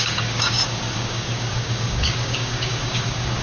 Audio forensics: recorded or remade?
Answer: remade